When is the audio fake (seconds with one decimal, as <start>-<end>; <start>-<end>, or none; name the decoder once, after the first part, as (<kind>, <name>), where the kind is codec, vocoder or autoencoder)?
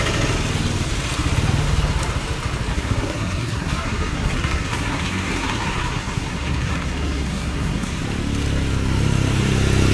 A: 2.7-8.0 (codec, SNAC)